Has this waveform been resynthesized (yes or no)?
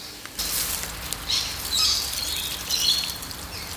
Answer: yes